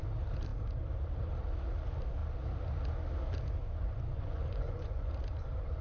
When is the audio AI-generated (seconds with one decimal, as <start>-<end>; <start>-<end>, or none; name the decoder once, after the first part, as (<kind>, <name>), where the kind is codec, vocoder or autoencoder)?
3.6-5.1 (vocoder, Vocos)